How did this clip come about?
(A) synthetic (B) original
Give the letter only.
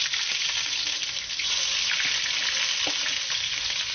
B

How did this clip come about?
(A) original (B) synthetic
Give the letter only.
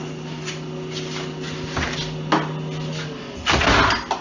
A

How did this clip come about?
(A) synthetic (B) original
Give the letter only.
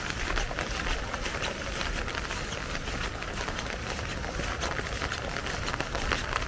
B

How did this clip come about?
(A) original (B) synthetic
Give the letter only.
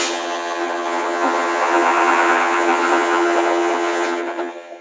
B